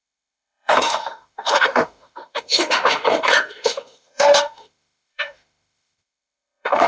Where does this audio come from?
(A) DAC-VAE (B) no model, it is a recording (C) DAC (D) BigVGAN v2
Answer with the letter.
A